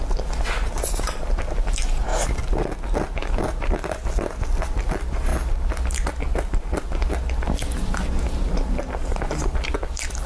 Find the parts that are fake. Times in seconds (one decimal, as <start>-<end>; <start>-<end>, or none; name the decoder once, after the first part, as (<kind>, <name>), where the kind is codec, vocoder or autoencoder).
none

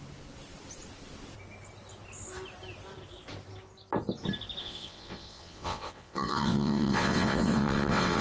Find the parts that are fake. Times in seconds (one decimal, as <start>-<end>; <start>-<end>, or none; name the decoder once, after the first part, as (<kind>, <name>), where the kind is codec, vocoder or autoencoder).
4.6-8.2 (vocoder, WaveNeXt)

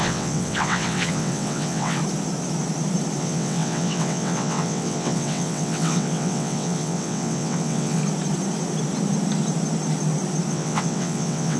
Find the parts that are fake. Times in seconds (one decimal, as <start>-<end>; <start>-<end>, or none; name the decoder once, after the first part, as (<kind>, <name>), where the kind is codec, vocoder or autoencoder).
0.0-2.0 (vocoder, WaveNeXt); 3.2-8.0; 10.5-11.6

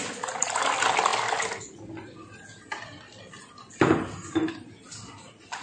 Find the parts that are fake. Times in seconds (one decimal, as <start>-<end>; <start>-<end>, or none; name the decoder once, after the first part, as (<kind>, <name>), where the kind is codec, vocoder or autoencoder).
none

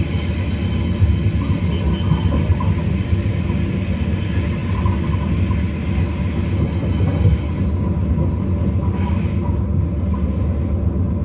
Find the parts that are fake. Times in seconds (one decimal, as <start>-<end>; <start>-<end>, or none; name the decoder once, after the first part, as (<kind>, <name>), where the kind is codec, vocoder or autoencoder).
none